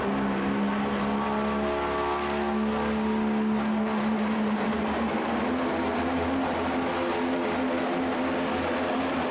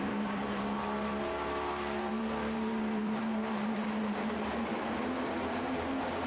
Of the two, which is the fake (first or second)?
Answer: second